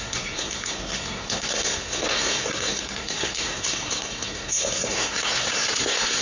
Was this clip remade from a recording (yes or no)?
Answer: yes